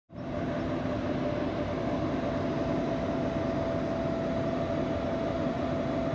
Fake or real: real